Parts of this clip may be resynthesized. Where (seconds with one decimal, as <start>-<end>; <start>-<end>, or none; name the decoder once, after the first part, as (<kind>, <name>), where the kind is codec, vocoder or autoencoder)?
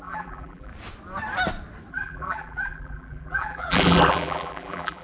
0.0-0.7 (vocoder, BigVGAN v2); 1.9-5.0